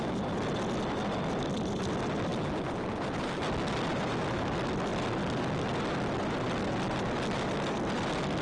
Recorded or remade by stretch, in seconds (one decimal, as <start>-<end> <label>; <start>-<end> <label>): 0.0-8.4 recorded